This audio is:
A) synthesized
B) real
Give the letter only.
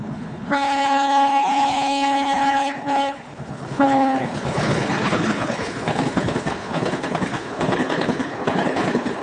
A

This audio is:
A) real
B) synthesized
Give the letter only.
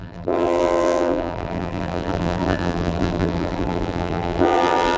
B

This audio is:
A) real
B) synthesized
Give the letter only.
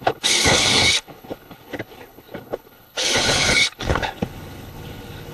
B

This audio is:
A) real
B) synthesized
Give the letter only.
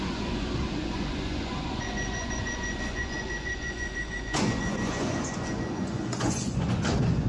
B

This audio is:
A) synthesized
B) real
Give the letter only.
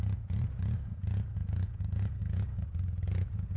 A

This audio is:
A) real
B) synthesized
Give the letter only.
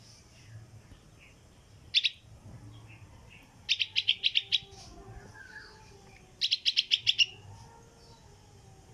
A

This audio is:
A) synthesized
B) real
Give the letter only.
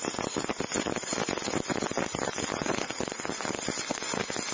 B